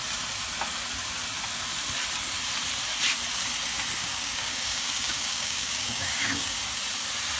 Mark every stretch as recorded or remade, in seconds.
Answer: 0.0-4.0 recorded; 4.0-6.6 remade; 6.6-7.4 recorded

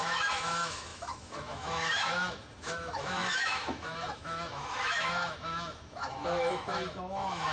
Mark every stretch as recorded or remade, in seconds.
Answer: 0.0-7.5 remade

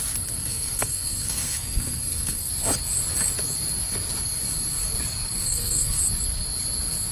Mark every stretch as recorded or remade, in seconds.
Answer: 0.0-0.4 recorded; 0.4-2.5 remade; 2.5-5.4 recorded; 5.4-6.0 remade; 6.0-7.1 recorded